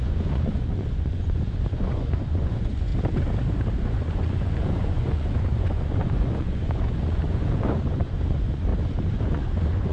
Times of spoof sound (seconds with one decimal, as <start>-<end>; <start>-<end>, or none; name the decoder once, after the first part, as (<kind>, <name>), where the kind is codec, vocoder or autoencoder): 0.0-2.9 (vocoder, Vocos); 3.8-8.7; 9.3-9.9